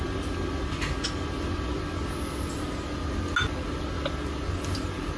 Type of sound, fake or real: real